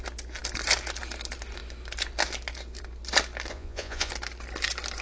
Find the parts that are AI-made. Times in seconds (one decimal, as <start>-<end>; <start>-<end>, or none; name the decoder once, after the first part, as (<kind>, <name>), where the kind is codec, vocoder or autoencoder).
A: 3.5-4.1 (vocoder, Vocos)